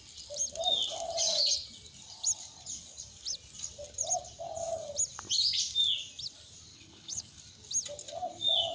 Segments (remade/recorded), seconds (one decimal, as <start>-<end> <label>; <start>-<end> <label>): 0.0-6.7 recorded; 6.7-7.4 remade; 7.4-8.7 recorded